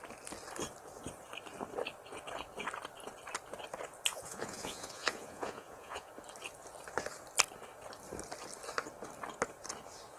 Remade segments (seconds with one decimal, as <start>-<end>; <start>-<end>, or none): 4.1-6.1